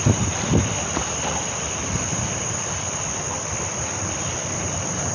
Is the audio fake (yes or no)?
no